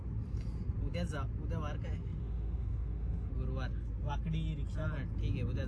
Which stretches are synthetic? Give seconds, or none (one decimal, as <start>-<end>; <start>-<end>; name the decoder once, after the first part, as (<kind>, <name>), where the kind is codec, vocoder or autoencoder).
2.2-3.3 (autoencoder, DAC-VAE)